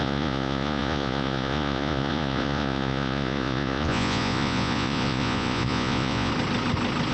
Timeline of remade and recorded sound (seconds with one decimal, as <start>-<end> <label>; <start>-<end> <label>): 0.0-6.3 remade; 6.3-7.1 recorded